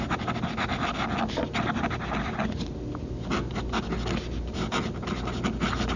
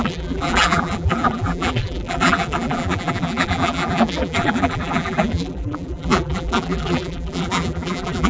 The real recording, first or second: first